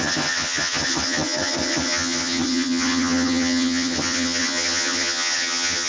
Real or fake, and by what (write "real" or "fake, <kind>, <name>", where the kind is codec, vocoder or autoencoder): fake, vocoder, HiFi-GAN